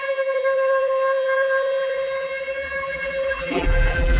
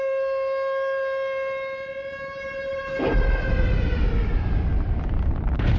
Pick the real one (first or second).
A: second